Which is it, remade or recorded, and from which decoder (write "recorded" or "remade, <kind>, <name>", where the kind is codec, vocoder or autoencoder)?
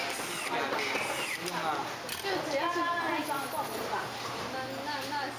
recorded